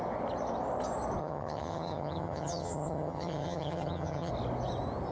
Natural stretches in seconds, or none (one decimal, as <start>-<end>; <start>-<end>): 0.0-1.2; 4.3-5.1